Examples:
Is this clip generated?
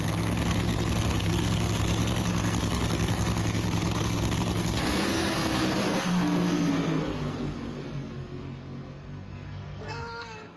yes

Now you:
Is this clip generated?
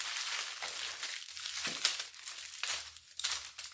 no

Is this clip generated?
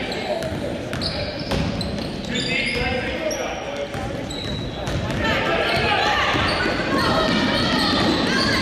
no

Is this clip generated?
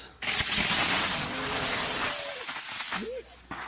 no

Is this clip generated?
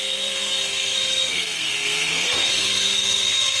yes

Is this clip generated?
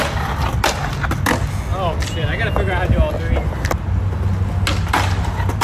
no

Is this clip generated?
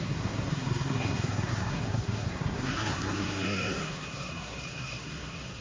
yes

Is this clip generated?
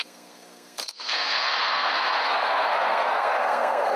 yes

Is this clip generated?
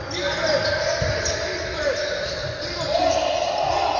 no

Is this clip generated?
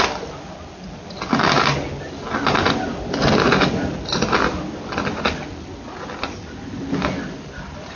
no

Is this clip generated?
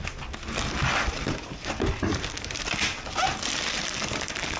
no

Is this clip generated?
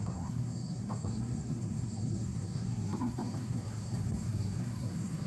yes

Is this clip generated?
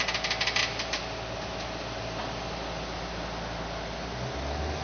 no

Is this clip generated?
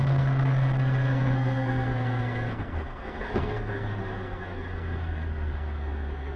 yes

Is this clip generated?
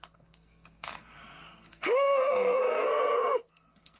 yes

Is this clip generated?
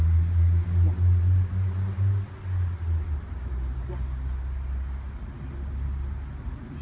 no